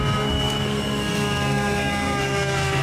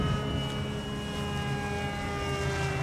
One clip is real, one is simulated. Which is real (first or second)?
second